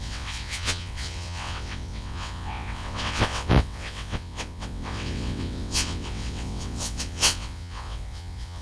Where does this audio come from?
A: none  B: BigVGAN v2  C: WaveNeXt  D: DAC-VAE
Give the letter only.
C